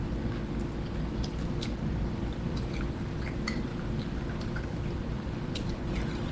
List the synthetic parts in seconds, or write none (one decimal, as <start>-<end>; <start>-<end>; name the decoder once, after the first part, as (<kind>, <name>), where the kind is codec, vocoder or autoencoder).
1.8-3.7 (vocoder, BigVGAN v2); 4.2-6.3